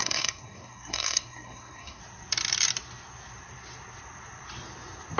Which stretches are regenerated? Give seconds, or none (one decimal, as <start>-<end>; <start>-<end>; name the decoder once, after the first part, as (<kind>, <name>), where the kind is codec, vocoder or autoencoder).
0.0-2.0 (codec, SNAC)